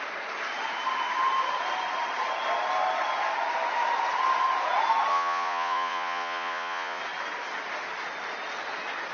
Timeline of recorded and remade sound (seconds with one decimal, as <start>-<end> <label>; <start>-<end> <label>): 0.0-5.1 recorded; 5.1-7.0 remade; 7.0-9.1 recorded